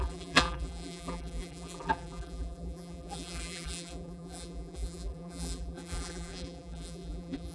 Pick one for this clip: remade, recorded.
remade